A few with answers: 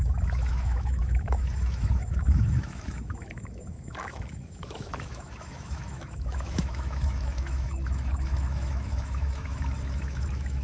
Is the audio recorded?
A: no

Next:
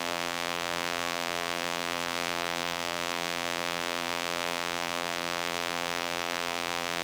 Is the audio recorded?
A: no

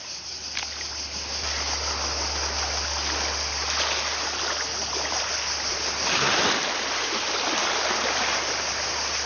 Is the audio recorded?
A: yes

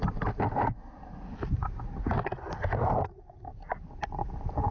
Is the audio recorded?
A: yes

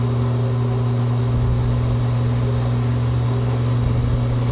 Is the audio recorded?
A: yes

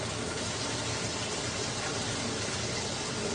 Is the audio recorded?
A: yes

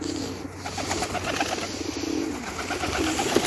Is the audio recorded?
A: yes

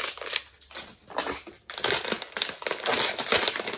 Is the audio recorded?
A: yes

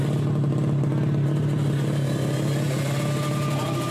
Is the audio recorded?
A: yes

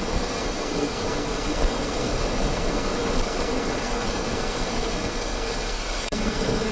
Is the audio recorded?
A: no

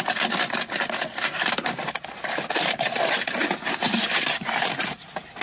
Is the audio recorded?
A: yes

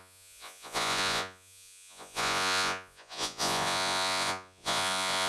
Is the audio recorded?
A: no